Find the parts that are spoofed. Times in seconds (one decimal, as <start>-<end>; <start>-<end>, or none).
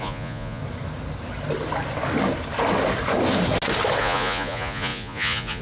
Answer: 0.0-0.6; 4.0-5.6